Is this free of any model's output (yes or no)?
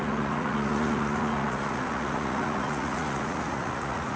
no